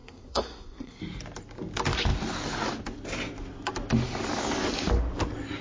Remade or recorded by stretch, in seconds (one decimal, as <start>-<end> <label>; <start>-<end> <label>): 0.0-1.0 remade; 1.0-5.6 recorded